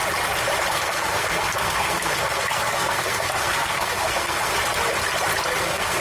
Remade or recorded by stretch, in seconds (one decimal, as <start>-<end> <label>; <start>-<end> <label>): 0.0-0.7 recorded; 0.7-4.5 remade; 4.5-5.6 recorded; 5.6-6.0 remade